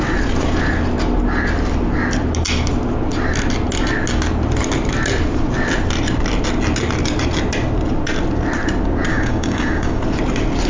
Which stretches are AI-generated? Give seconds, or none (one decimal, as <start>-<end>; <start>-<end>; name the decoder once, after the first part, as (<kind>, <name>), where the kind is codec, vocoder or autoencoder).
9.1-10.0 (codec, DAC)